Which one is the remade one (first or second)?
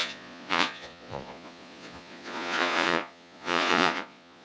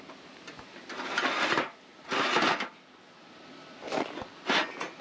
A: first